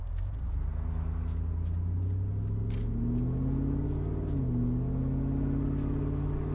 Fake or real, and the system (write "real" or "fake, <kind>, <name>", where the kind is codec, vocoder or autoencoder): real